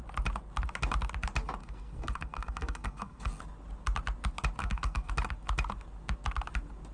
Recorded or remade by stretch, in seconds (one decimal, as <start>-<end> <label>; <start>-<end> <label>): 0.0-1.6 recorded; 1.6-3.4 remade; 3.4-4.6 recorded; 4.6-5.1 remade; 5.1-6.9 recorded